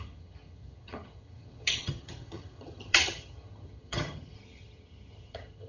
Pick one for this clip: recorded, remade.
remade